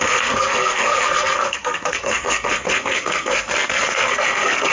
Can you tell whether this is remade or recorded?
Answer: remade